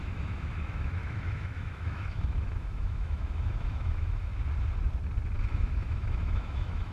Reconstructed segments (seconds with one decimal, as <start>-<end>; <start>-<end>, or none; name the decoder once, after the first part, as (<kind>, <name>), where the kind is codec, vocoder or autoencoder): 0.0-4.3 (autoencoder, DAC-VAE); 5.5-6.9